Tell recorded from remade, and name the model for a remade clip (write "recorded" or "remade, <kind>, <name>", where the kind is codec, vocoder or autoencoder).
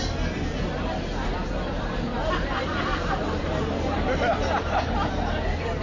recorded